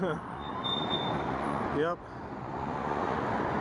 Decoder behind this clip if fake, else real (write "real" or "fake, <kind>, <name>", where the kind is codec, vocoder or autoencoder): fake, vocoder, Vocos